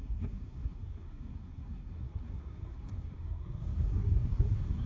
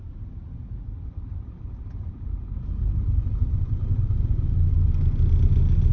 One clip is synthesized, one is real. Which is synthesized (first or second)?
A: first